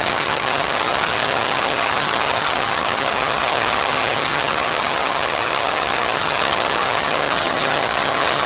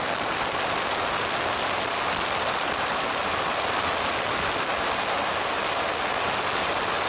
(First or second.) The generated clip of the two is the first